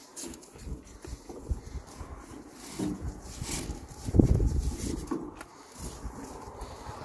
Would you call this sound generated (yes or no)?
no